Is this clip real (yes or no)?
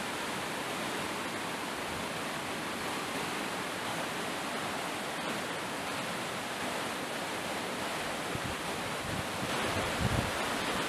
yes